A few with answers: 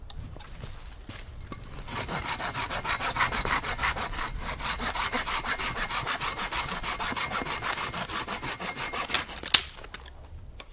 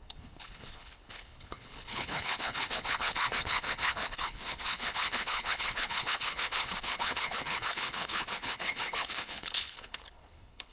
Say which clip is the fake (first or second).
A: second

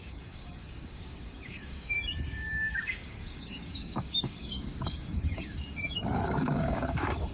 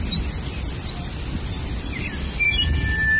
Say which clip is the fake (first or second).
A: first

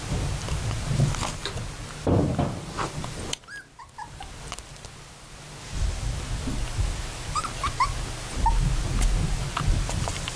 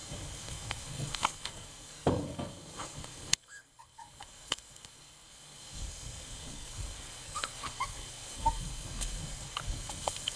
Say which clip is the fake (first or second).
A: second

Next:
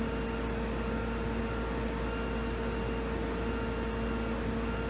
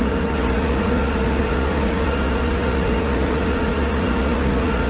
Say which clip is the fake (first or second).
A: second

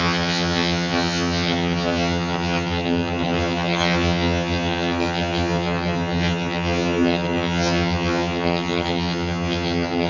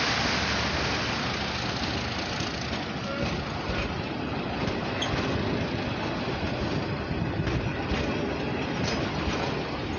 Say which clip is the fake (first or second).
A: first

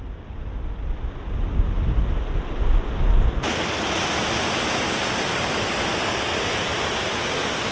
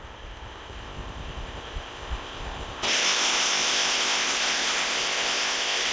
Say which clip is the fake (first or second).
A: second